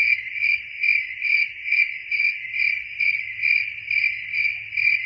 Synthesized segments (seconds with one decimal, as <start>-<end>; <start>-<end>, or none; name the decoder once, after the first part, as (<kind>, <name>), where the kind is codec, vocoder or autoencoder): none